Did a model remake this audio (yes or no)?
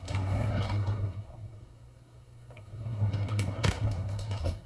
yes